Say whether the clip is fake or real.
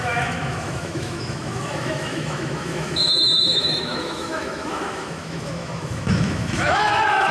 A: fake